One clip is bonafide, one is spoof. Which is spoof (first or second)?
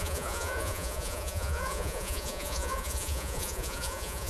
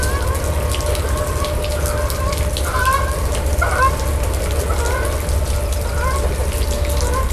first